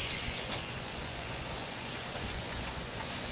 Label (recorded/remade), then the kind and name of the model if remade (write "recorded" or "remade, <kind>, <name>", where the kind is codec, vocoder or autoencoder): remade, vocoder, Vocos